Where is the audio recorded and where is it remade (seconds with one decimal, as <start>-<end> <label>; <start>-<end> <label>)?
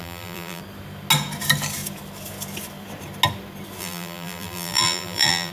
0.0-0.6 remade; 0.6-3.8 recorded; 3.8-5.5 remade